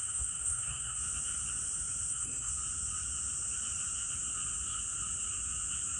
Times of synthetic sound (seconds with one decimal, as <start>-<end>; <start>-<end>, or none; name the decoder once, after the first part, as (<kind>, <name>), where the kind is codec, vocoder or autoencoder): 0.0-1.0 (codec, SNAC); 2.1-2.5

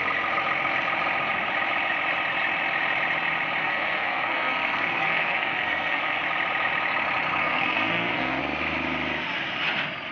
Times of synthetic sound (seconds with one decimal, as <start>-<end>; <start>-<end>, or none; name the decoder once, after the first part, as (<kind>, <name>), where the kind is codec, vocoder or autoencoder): 3.6-6.2 (codec, SNAC); 7.4-8.4